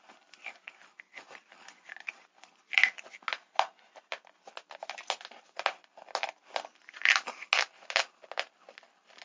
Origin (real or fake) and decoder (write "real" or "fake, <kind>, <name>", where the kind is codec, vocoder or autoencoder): real